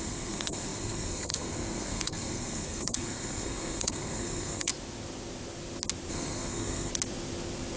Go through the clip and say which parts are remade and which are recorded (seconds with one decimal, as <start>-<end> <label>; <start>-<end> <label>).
0.0-4.7 remade; 4.7-6.1 recorded; 6.1-6.9 remade; 6.9-7.8 recorded